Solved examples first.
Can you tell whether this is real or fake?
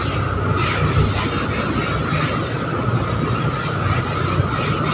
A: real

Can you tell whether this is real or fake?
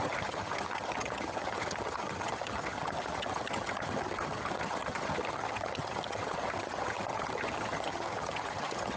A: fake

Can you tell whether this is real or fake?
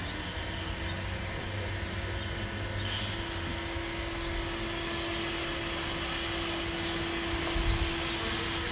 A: real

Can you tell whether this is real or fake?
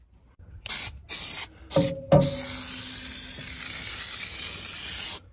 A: real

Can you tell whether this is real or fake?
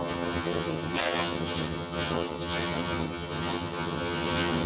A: fake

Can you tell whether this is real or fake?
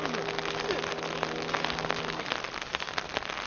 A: real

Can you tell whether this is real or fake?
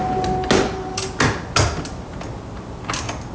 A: real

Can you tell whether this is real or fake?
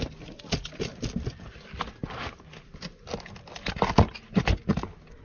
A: real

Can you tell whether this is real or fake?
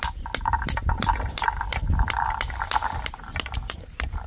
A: real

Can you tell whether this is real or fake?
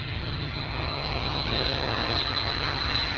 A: fake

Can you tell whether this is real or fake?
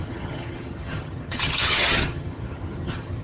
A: fake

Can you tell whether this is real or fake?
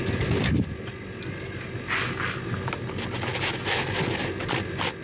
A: real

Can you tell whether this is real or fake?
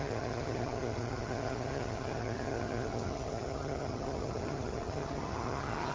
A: fake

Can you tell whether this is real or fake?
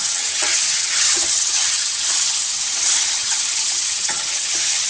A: fake